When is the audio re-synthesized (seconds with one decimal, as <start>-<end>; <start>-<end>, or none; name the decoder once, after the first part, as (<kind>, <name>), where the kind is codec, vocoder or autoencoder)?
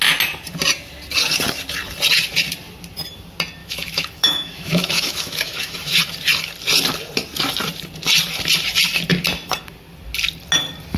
3.6-6.0 (autoencoder, DAC-VAE)